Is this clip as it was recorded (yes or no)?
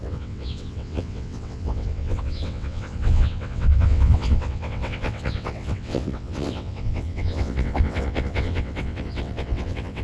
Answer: no